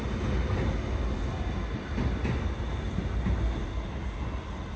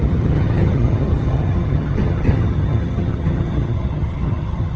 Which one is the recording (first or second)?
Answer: first